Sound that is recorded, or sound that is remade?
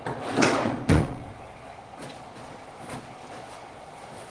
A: remade